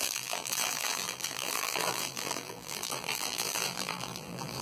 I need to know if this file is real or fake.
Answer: fake